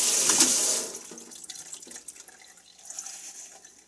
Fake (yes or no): no